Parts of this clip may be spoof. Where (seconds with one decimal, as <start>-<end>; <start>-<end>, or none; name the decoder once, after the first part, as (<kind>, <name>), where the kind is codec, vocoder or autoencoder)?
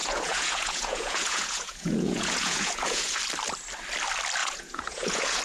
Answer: 0.0-3.2 (vocoder, Vocos); 4.4-5.4